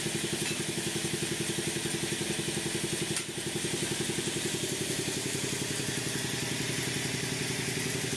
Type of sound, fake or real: real